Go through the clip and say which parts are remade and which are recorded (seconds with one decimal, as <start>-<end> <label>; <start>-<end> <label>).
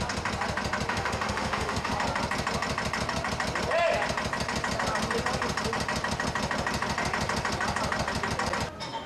0.0-0.9 recorded; 0.9-1.9 remade; 1.9-9.1 recorded